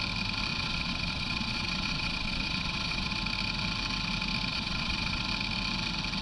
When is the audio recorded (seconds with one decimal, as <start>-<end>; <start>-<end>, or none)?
0.0-0.5; 3.1-4.5; 5.2-6.2